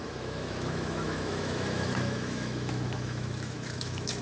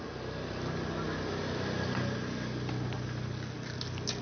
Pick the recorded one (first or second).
second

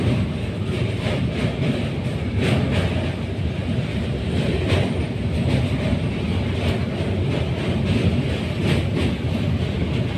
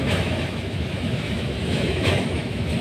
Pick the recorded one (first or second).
first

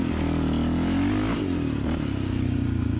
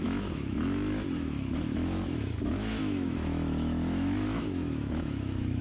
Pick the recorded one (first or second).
first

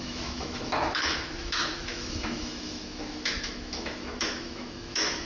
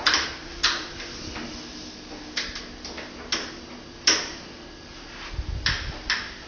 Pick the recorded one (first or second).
second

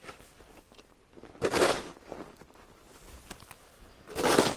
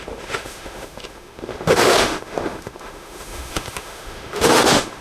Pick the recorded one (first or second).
first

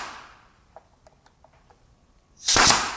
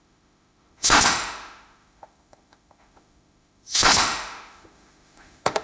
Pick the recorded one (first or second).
first